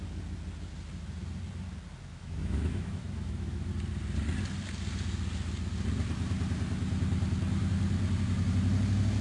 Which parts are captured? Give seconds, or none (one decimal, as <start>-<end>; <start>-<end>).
0.0-2.1; 3.7-9.2